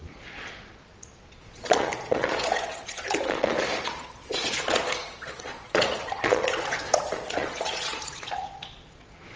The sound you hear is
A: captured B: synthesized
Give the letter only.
B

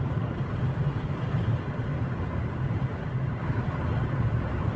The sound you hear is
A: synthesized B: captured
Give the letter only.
B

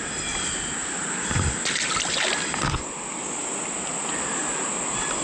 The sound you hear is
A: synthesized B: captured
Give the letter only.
B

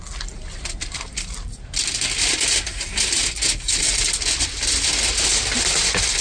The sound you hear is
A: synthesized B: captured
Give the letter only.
B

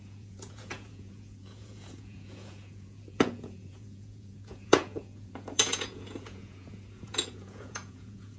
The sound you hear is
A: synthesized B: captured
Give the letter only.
A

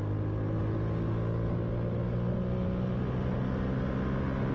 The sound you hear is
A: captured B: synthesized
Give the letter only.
A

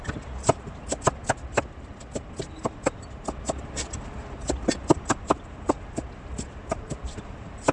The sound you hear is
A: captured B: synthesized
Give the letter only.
A